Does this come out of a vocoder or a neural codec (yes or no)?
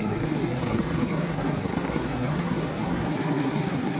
yes